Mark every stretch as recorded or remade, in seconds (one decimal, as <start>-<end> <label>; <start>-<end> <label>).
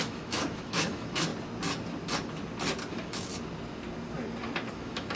0.0-1.3 remade; 1.3-2.9 recorded; 2.9-3.3 remade; 3.3-4.7 recorded; 4.7-5.2 remade